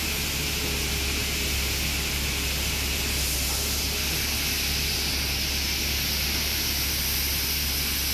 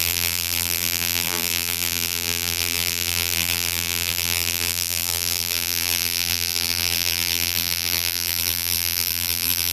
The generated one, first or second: second